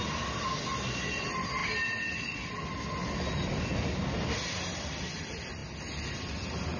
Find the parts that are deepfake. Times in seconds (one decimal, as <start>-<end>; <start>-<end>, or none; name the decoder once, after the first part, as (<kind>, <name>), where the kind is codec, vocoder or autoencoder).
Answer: none